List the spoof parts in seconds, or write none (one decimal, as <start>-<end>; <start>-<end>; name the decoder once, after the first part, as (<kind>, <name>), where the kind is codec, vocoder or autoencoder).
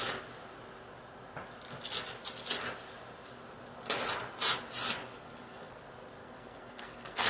5.0-5.8 (codec, SNAC); 6.2-7.3